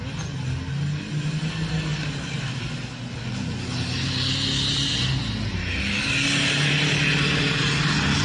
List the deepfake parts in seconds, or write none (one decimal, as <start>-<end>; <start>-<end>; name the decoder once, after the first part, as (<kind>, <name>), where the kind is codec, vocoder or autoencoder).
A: none

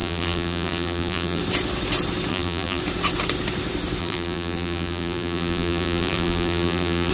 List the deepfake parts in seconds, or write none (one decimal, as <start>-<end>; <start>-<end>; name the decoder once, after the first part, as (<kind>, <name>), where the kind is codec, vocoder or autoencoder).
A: 0.0-1.4 (vocoder, BigVGAN v2); 2.3-2.8; 4.0-7.1

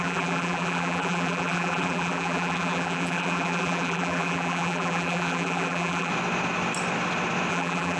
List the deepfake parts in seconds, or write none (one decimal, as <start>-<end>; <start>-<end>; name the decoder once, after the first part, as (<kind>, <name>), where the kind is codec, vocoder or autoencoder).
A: 0.0-6.1 (vocoder, BigVGAN v2); 7.5-8.0

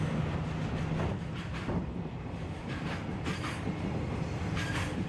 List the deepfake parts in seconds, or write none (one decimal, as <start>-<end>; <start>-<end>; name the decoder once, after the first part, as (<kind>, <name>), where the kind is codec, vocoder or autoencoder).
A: 1.5-3.1 (vocoder, BigVGAN v2)

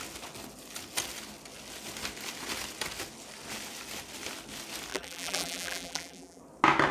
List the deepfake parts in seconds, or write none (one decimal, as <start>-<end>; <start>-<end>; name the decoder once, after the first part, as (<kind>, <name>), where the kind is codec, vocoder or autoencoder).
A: 4.9-6.4 (vocoder, BigVGAN v2)

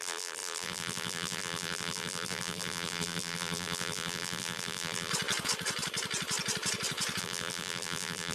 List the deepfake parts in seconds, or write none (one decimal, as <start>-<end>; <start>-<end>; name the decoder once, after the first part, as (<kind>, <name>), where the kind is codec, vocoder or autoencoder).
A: 0.0-5.1 (vocoder, BigVGAN v2); 7.2-8.3

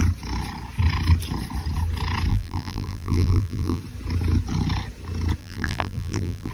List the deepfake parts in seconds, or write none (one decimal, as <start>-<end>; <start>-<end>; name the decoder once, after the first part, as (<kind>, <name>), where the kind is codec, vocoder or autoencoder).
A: 2.3-3.8 (vocoder, BigVGAN v2); 5.4-6.5